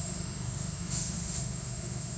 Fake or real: fake